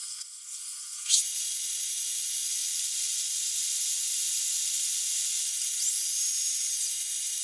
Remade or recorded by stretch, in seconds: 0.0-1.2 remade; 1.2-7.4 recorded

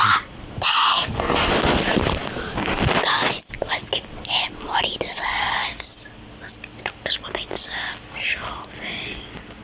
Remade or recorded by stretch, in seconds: 0.0-0.9 recorded; 0.9-1.5 remade; 1.5-9.6 recorded

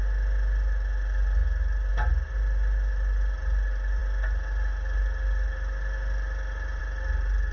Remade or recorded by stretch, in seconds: 0.0-7.5 recorded

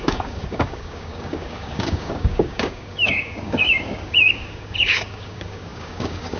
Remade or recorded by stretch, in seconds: 0.0-6.4 remade